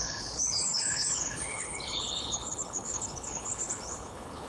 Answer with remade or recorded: remade